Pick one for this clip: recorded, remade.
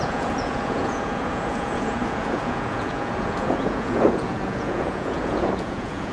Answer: remade